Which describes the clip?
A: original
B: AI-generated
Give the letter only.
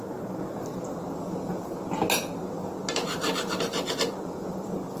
A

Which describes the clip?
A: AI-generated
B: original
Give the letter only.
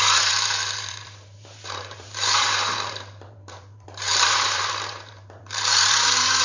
A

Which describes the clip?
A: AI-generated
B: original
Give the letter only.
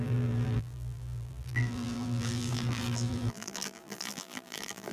A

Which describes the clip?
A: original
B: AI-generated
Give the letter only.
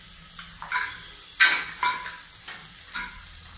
A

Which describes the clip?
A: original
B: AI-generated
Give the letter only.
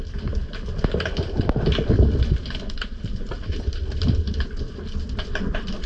A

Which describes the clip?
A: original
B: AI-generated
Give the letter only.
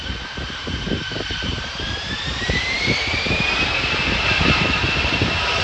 B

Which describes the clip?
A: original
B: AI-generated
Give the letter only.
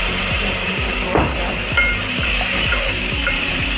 B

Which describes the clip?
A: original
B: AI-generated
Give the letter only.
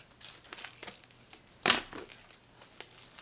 A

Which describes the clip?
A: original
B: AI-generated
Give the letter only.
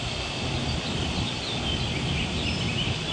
A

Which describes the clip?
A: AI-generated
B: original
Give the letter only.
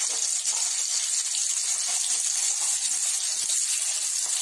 B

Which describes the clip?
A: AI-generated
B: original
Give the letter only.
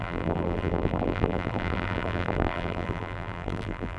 A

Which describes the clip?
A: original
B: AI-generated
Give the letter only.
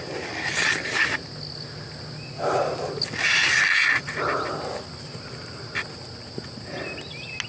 A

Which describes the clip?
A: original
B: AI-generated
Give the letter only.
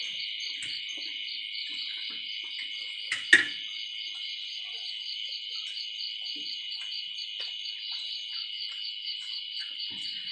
A